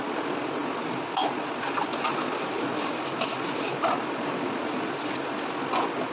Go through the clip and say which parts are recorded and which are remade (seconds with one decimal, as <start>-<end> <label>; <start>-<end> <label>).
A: 0.0-6.1 recorded